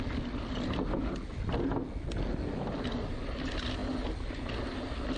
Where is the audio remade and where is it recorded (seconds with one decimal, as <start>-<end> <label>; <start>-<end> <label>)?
0.0-5.2 recorded